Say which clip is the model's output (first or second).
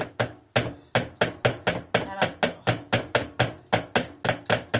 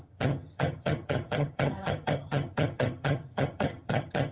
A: second